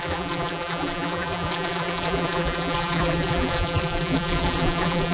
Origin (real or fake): fake